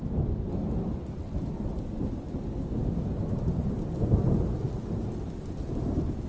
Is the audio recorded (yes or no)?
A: yes